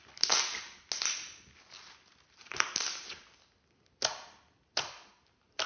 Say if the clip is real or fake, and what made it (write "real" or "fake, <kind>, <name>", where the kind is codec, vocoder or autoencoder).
real